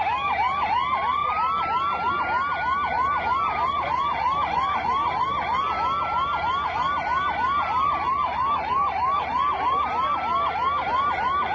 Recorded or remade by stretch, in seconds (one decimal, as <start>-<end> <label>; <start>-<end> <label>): 0.0-11.5 recorded